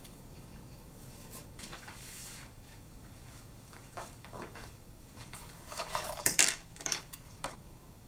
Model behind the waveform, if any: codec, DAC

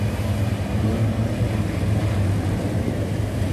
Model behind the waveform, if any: none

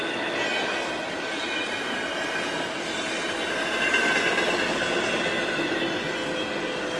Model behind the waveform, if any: none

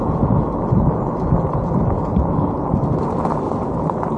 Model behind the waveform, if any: none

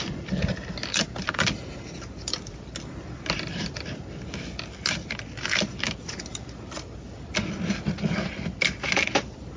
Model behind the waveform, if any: none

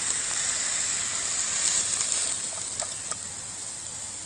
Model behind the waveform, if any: none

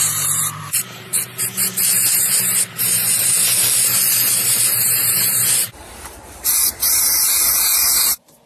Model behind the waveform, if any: vocoder, BigVGAN v2